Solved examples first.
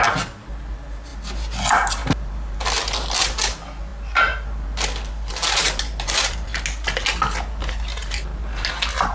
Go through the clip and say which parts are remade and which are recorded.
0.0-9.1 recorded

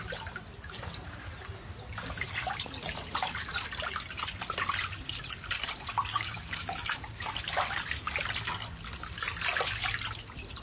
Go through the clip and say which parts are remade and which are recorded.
0.0-6.1 recorded; 6.1-7.3 remade; 7.3-10.6 recorded